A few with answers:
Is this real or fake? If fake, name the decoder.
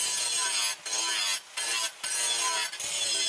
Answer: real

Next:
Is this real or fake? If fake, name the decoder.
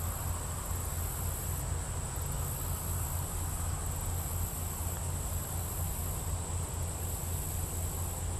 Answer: real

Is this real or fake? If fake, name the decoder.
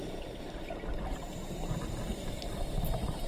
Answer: fake, vocoder, BigVGAN v2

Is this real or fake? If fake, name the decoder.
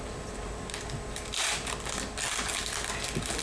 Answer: real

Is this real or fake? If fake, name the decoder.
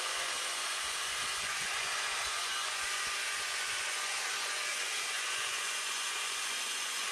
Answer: fake, vocoder, Vocos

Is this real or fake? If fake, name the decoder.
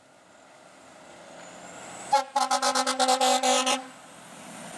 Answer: real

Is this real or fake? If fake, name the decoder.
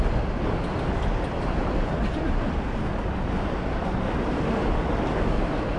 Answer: real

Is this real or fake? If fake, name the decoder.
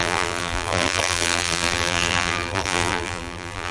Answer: fake, vocoder, BigVGAN v2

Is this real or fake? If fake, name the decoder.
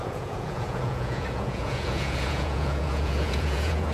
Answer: fake, vocoder, Vocos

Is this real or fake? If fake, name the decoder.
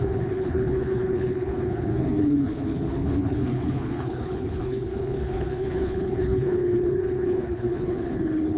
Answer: fake, codec, HILCodec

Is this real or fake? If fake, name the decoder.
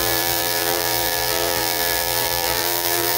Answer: fake, vocoder, BigVGAN v2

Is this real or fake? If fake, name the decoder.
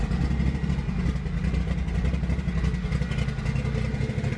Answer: real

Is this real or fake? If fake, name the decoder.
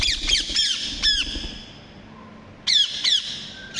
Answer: real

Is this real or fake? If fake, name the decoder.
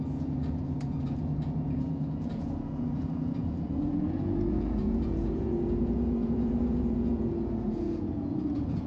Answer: fake, vocoder, Vocos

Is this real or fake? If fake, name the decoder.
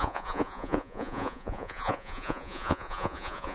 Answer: fake, vocoder, Vocos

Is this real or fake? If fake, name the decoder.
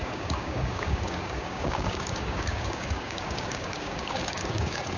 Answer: fake, codec, DAC